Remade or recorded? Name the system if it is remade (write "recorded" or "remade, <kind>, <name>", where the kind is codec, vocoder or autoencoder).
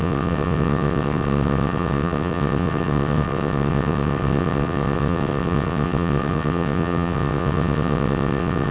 remade, vocoder, WaveNeXt